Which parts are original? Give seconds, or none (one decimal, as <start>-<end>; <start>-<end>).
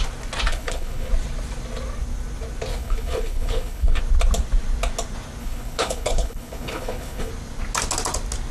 0.0-0.5; 1.1-2.7; 4.0-5.4; 7.3-8.5